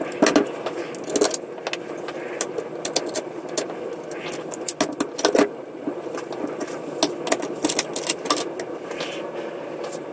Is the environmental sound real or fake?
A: real